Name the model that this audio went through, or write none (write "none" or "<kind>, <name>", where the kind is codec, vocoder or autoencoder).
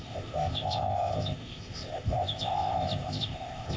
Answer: codec, ZipCodec